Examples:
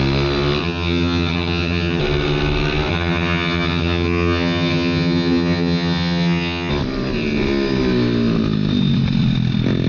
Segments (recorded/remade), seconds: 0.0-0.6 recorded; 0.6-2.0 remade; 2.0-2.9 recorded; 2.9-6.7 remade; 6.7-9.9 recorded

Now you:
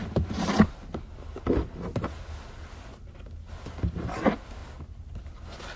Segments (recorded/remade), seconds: 0.0-5.8 recorded

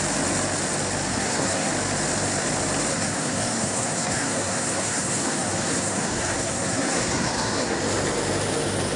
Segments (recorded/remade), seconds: 0.0-1.1 recorded; 1.1-1.7 remade; 1.7-2.9 recorded; 2.9-7.8 remade; 7.8-9.0 recorded

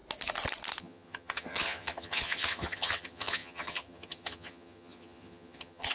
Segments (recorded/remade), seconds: 0.0-0.8 recorded; 0.8-5.9 remade

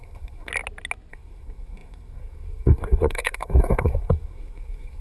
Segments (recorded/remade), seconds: 0.0-0.5 remade; 0.5-1.1 recorded; 1.1-5.0 remade

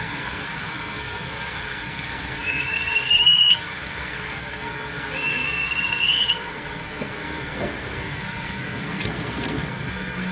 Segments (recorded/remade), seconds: 0.0-10.3 remade

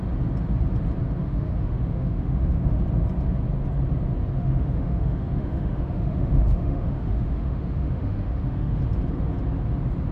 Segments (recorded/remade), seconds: 0.0-1.2 recorded; 1.2-2.8 remade; 2.8-4.4 recorded; 4.4-8.8 remade; 8.8-10.1 recorded

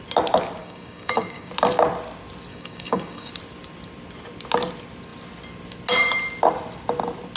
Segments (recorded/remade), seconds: 0.0-0.6 recorded; 0.6-1.5 remade; 1.5-2.5 recorded; 2.5-3.3 remade; 3.3-7.4 recorded